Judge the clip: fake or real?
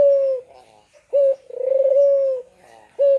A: real